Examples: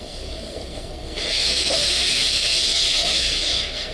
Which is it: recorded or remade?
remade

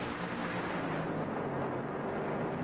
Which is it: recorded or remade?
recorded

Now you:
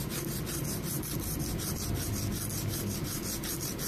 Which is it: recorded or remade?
recorded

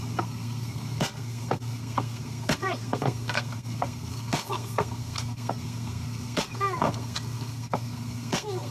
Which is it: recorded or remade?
remade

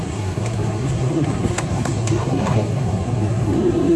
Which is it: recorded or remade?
remade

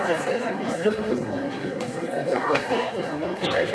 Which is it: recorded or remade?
remade